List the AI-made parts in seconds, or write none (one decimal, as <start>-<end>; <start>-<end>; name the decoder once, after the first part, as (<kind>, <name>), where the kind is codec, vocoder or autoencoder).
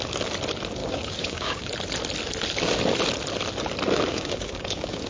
0.8-1.7 (codec, DAC); 4.1-5.1